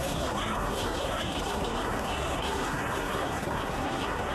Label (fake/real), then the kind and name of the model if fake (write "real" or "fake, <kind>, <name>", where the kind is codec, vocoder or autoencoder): fake, codec, SNAC